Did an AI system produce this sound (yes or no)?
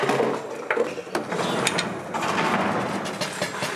no